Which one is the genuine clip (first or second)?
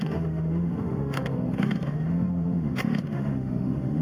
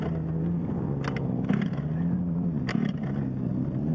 second